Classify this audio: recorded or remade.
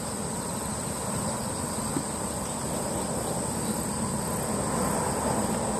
recorded